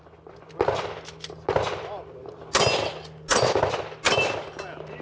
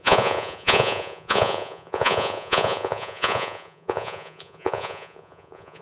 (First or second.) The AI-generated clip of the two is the second